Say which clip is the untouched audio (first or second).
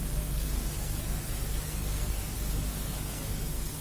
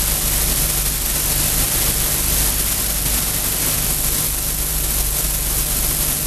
second